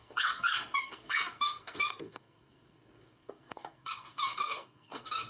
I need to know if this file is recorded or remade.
remade